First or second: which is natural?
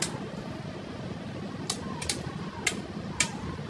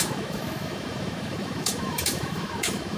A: first